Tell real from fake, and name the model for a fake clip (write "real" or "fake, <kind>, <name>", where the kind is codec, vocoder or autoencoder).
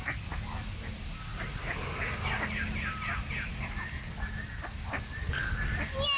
real